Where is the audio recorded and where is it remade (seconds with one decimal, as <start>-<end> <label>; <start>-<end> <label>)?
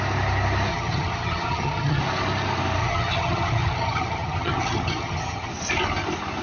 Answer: 0.0-0.7 recorded; 0.7-2.0 remade; 2.0-2.8 recorded; 2.8-5.5 remade; 5.5-6.4 recorded